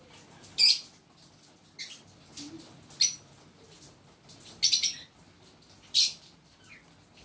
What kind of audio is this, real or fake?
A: real